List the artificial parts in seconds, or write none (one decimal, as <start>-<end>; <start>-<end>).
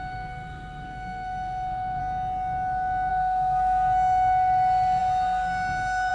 0.0-2.0; 3.1-6.1